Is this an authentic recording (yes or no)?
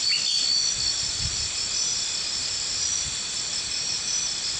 yes